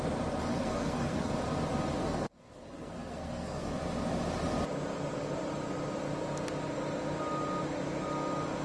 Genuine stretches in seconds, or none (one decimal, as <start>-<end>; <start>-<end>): 0.0-0.5; 1.3-2.0; 3.7-8.6